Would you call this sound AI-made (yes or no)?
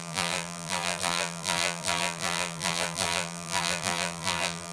yes